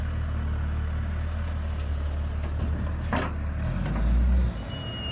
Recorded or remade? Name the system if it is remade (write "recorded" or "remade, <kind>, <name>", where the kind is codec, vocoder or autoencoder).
recorded